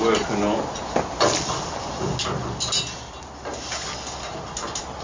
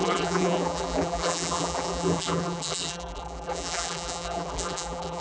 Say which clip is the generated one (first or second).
second